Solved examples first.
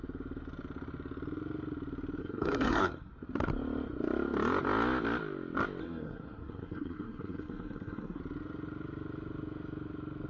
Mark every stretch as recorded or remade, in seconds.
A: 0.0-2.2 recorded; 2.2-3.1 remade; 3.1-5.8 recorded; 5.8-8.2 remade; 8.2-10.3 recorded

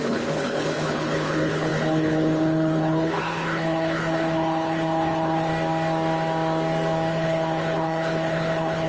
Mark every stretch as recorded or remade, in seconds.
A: 0.0-5.5 remade; 5.5-7.1 recorded; 7.1-8.9 remade

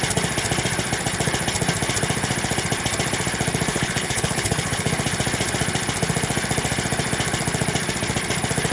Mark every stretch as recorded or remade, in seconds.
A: 0.0-3.7 recorded; 3.7-4.9 remade; 4.9-8.7 recorded

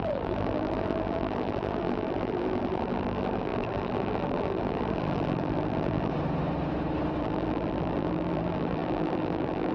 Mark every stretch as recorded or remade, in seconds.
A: 0.0-6.1 remade; 6.1-7.2 recorded; 7.2-9.7 remade

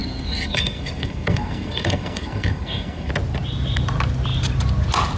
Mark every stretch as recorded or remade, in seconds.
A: 0.0-3.1 remade; 3.1-5.2 recorded